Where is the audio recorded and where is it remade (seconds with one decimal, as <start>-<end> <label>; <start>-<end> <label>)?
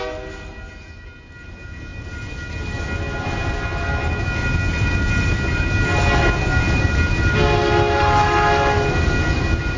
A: 0.0-9.8 recorded